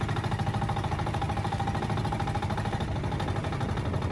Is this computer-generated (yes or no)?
no